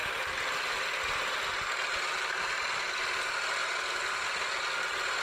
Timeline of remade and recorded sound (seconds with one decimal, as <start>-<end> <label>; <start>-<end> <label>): 0.0-3.6 recorded; 3.6-4.6 remade; 4.6-5.2 recorded